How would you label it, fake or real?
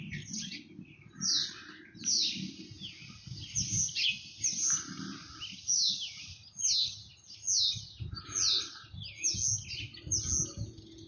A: real